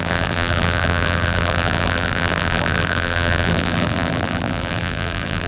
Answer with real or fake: fake